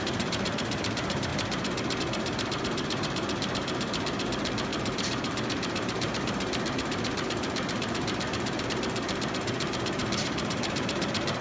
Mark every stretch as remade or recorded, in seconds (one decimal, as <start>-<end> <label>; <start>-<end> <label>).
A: 0.0-1.3 remade; 1.3-2.0 recorded; 2.0-11.4 remade